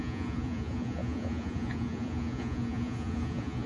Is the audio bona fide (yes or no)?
no